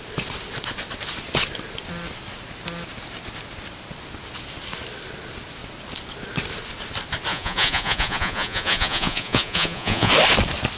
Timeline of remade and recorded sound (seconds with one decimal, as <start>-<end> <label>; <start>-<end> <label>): 0.0-7.3 recorded; 7.3-10.1 remade; 10.1-10.8 recorded